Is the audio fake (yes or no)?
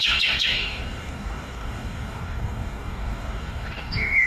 yes